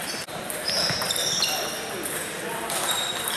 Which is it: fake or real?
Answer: real